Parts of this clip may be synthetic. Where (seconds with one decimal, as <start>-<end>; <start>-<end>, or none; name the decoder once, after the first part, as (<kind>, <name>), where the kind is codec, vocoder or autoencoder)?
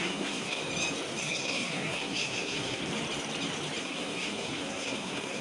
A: 0.0-0.6 (codec, SNAC); 1.2-2.8; 3.8-5.4